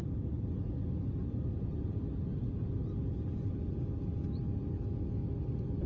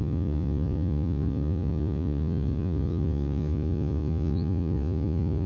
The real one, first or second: first